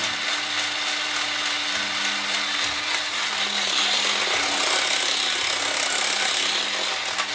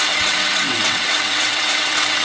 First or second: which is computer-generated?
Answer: second